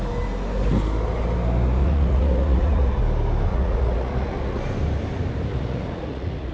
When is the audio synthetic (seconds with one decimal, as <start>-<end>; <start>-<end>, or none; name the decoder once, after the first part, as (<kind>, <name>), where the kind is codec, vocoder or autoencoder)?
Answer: 1.8-3.0 (vocoder, Vocos); 3.5-4.6; 5.5-6.5